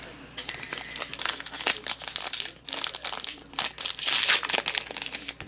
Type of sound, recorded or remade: recorded